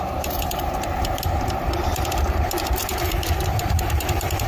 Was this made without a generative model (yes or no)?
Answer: no